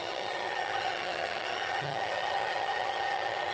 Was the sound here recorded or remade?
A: remade